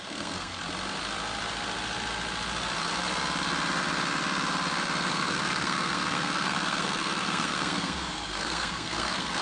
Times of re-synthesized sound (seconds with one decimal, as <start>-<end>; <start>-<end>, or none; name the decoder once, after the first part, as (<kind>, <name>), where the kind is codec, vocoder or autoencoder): 0.0-0.5 (codec, SNAC); 5.1-9.4